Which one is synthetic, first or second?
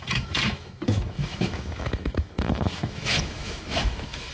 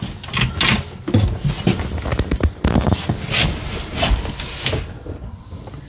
first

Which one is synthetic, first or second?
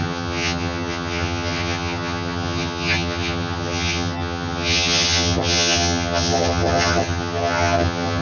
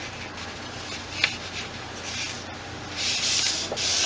first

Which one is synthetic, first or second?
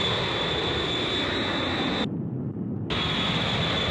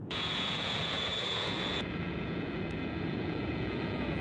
second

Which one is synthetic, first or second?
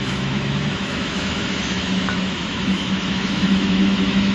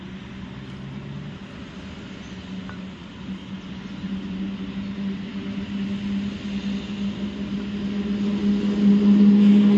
first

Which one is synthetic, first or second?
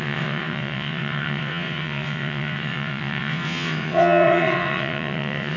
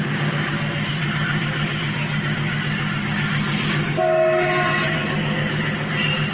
first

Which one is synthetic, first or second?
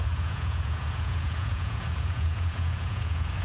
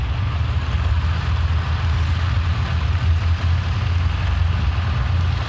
first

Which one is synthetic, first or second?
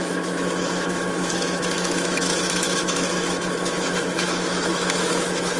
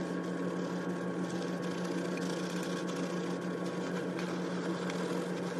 first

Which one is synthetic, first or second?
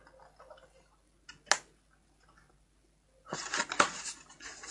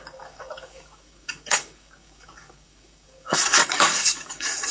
second